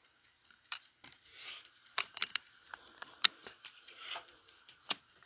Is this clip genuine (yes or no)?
no